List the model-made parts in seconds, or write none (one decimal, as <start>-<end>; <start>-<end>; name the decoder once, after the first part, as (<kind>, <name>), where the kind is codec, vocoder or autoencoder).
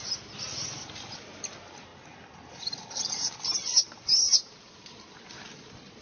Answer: none